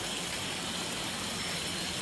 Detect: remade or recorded recorded